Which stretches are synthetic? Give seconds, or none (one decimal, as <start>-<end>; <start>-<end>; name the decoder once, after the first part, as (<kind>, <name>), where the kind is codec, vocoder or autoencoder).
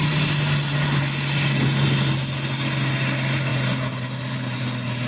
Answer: none